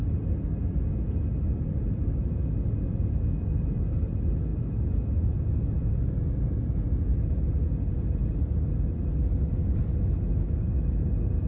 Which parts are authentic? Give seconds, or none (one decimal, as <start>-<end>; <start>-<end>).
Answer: 0.0-11.5